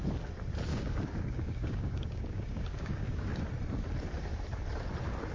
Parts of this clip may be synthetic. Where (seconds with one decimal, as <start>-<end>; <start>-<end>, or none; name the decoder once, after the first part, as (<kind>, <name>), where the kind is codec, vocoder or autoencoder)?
0.7-3.3 (codec, DAC)